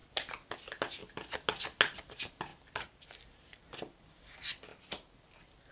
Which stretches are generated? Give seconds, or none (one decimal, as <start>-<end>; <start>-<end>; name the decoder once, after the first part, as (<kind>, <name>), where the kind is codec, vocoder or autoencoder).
none